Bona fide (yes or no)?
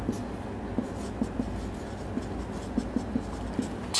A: yes